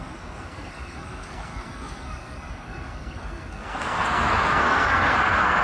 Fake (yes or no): yes